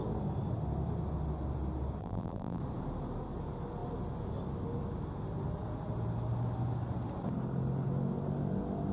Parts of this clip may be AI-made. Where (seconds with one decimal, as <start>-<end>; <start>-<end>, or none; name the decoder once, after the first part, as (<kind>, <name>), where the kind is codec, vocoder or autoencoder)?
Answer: 2.0-2.6 (vocoder, BigVGAN v2)

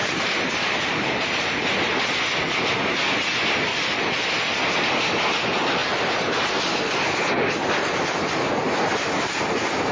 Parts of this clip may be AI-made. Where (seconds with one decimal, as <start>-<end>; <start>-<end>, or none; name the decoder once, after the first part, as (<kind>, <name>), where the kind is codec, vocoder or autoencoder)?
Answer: 0.0-1.6 (vocoder, BigVGAN v2); 3.7-4.6; 5.8-6.3; 7.8-8.5

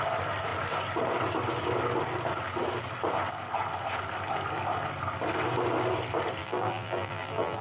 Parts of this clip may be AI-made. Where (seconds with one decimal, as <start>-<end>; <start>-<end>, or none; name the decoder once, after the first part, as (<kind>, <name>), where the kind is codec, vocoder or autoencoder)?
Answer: 6.4-7.6 (vocoder, BigVGAN v2)

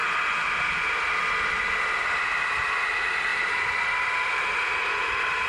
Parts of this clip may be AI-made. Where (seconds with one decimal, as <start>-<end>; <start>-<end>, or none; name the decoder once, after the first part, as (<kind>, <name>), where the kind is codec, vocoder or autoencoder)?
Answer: none

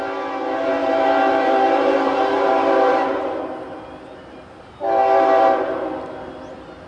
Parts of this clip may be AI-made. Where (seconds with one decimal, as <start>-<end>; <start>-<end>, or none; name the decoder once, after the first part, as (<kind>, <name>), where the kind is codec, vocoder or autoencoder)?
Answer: 0.8-3.8 (vocoder, BigVGAN v2)

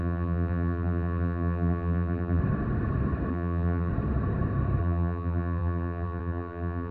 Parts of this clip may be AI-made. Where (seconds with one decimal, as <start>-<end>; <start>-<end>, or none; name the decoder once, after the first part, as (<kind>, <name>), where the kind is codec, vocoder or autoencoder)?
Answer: 0.0-2.4 (vocoder, BigVGAN v2); 3.3-3.9; 4.8-6.9